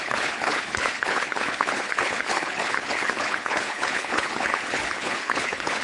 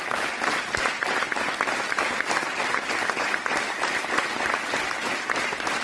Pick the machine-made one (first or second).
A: first